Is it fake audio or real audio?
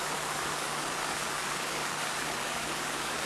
fake